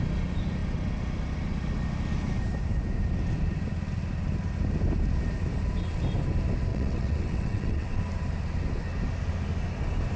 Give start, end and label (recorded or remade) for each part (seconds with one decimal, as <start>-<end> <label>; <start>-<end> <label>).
0.0-6.7 recorded; 6.7-8.0 remade; 8.0-10.2 recorded